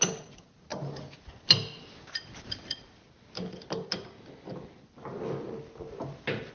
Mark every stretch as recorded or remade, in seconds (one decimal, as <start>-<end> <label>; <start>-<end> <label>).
0.0-6.5 recorded